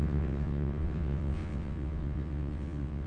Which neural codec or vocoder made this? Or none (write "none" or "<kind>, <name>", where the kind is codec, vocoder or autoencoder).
vocoder, WaveNeXt